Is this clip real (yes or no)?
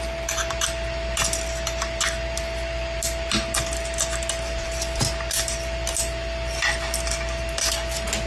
yes